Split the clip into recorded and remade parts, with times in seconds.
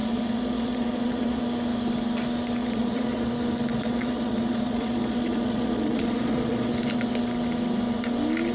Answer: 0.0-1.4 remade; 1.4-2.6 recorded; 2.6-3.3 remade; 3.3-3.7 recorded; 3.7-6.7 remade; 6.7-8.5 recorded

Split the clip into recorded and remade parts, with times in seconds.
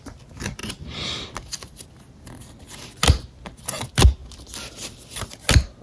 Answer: 0.0-5.8 recorded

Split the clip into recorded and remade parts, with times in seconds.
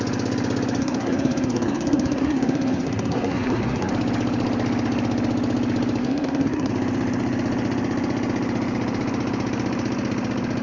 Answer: 0.0-0.8 recorded; 0.8-3.9 remade; 3.9-6.0 recorded; 6.0-6.7 remade; 6.7-10.6 recorded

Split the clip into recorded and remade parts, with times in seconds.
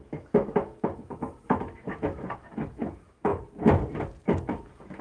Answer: 0.0-3.3 remade; 3.3-4.5 recorded; 4.5-5.0 remade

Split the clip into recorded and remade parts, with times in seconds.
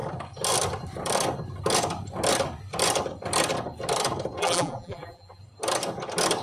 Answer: 0.0-4.4 recorded; 4.4-5.4 remade; 5.4-6.4 recorded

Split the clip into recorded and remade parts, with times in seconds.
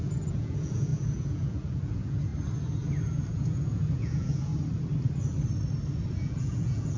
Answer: 0.0-2.3 remade; 2.3-3.0 recorded; 3.0-4.5 remade; 4.5-6.1 recorded; 6.1-7.0 remade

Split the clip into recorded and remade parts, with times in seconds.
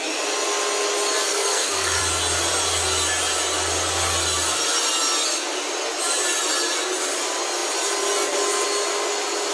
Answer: 0.0-1.3 recorded; 1.3-2.0 remade; 2.0-9.5 recorded